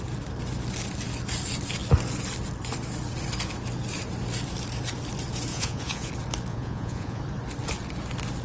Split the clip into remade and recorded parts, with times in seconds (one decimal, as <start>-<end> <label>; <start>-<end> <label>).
0.0-5.5 recorded; 5.5-6.1 remade; 6.1-6.5 recorded; 6.5-7.2 remade; 7.2-8.4 recorded